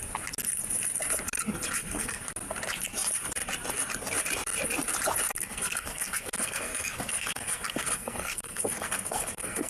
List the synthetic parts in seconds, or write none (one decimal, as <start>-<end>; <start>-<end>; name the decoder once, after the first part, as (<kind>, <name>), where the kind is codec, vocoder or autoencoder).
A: 1.8-2.3 (codec, SNAC); 5.4-9.7